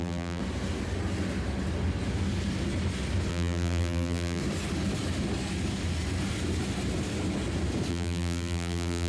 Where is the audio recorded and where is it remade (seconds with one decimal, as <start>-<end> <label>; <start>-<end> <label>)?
0.0-0.4 remade; 0.4-3.3 recorded; 3.3-4.4 remade; 4.4-7.9 recorded; 7.9-9.1 remade